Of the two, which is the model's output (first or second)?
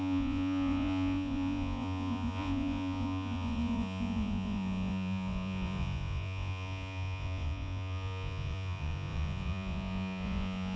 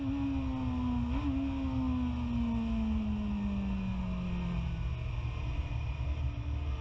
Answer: first